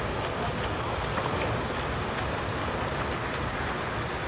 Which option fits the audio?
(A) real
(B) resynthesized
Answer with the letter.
A